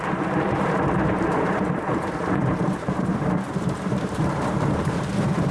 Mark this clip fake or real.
fake